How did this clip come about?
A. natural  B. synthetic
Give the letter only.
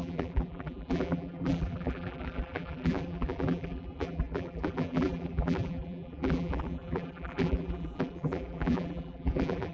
B